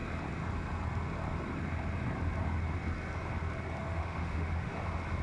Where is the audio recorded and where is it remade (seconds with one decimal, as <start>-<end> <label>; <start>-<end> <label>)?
0.0-3.8 recorded; 3.8-4.7 remade; 4.7-5.2 recorded